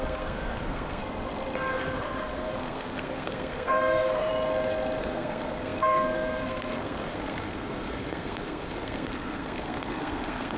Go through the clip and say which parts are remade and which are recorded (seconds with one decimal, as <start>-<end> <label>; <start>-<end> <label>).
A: 0.0-1.0 remade; 1.0-1.7 recorded; 1.7-4.3 remade; 4.3-5.0 recorded; 5.0-10.6 remade